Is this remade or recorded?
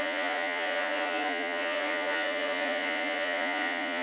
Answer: remade